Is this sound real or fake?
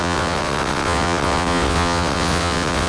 fake